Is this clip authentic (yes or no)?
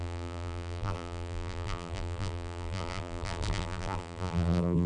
no